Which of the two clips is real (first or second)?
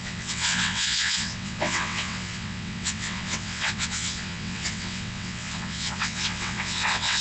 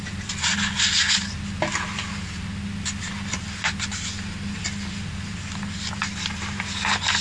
second